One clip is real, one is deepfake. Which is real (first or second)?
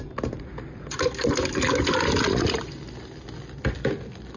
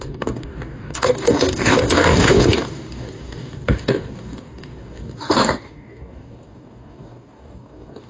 first